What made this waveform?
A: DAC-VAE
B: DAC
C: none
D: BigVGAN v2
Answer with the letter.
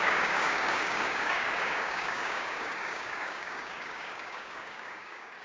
B